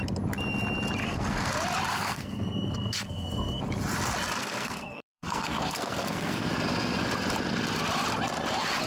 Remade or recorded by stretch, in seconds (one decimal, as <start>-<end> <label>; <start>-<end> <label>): 0.0-1.0 recorded; 1.0-1.5 remade; 1.5-1.9 recorded; 1.9-3.6 remade; 3.6-4.4 recorded; 4.4-6.5 remade; 6.5-8.9 recorded